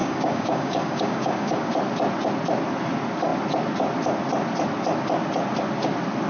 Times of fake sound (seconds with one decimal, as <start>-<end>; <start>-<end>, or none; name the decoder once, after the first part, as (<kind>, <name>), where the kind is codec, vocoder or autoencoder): 0.0-1.7 (codec, DAC)